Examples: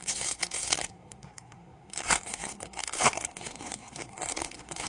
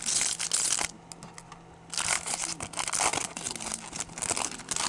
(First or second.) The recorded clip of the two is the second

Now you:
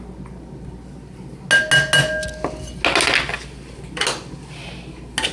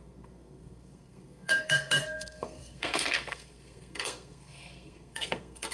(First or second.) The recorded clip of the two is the first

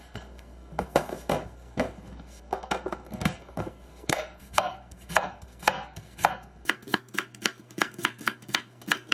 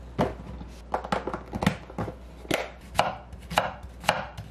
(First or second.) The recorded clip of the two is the second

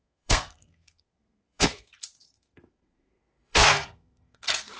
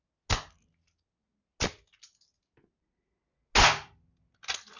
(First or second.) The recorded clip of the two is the second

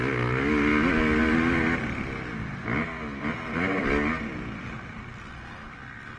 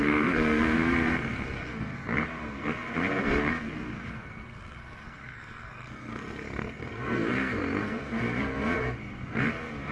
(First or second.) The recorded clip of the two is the first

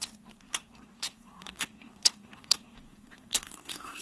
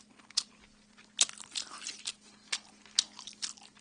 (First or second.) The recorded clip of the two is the second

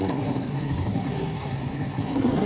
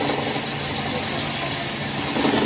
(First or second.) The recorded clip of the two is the second